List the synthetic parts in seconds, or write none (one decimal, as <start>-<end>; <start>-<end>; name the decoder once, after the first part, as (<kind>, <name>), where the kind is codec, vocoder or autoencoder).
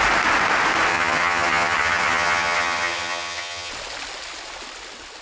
0.9-3.7 (vocoder, HiFi-GAN)